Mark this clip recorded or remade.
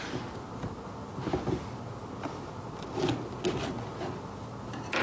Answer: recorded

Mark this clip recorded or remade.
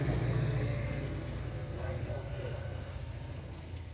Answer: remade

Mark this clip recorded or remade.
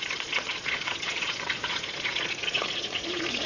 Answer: remade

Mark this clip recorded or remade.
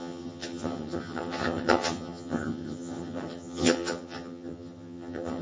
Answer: remade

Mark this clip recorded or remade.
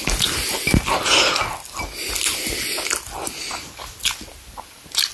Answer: recorded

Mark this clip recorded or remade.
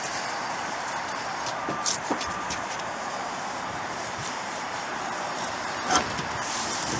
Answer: remade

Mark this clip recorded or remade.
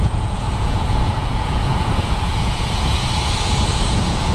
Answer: remade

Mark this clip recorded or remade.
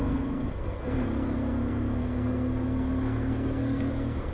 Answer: remade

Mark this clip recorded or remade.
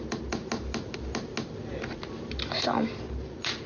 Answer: recorded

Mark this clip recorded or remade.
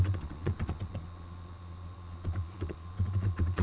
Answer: remade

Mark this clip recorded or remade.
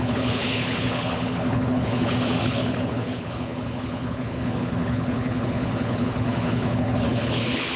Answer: remade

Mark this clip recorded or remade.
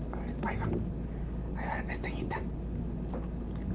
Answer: recorded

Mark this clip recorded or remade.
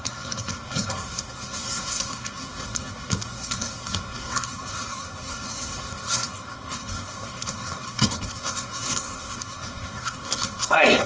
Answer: remade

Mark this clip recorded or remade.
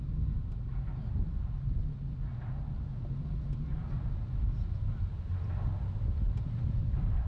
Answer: recorded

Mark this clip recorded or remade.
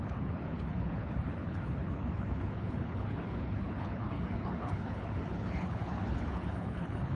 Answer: remade